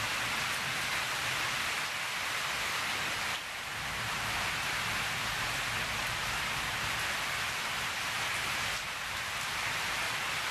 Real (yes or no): yes